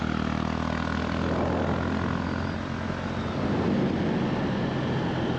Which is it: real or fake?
real